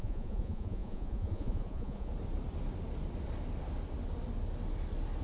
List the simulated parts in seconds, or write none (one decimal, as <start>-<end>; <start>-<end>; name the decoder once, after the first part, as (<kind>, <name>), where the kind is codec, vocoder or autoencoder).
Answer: 0.0-2.1 (vocoder, Vocos)